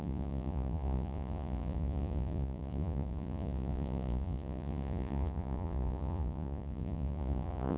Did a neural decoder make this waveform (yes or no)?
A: yes